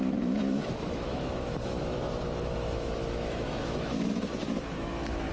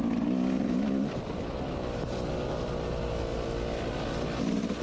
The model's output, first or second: first